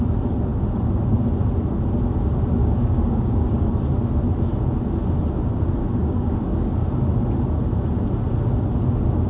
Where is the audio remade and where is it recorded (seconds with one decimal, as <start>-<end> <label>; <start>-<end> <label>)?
0.0-2.6 recorded; 2.6-3.8 remade; 3.8-5.8 recorded; 5.8-6.7 remade; 6.7-9.3 recorded